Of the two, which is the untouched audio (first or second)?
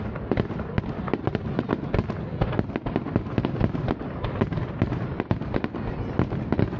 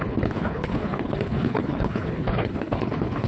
first